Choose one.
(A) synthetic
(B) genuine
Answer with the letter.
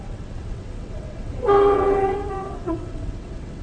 A